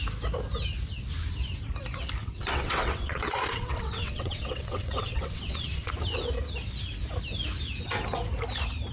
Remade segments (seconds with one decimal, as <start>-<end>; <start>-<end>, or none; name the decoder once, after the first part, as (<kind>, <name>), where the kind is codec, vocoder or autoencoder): 2.2-5.9 (vocoder, WaveNeXt)